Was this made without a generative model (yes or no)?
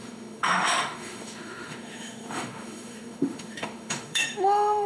no